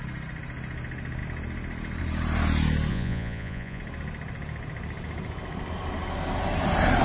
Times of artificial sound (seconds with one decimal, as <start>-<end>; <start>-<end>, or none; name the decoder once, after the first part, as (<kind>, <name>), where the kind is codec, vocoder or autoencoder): 2.9-3.8 (vocoder, Vocos)